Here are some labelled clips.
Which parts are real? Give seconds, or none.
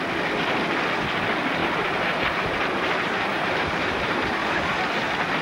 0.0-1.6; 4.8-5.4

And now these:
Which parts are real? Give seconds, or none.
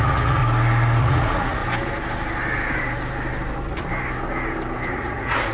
0.4-1.0; 1.6-4.9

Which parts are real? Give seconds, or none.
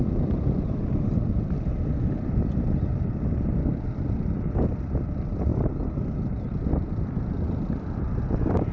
5.5-7.1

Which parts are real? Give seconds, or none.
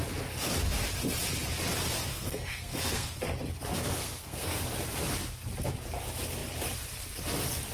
0.0-2.1; 3.2-3.8; 4.6-7.7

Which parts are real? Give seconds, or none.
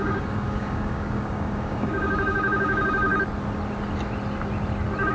3.1-5.1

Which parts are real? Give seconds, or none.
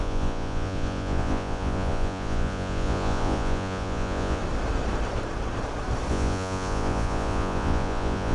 4.4-6.1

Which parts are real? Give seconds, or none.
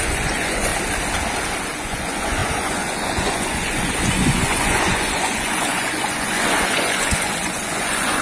0.7-1.6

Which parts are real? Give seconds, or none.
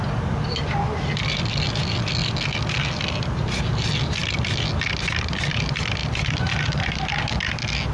0.0-6.0; 7.0-7.9